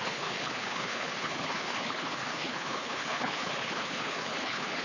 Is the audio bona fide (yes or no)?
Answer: no